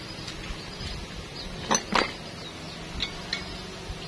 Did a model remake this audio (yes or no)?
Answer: no